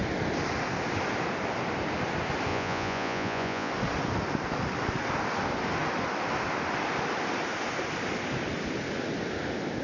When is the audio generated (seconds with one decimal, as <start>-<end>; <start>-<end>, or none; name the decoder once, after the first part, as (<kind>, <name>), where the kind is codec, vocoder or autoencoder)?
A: 2.5-3.7 (vocoder, Vocos)